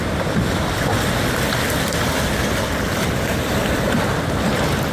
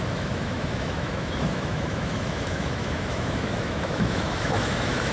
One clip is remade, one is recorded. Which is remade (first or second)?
second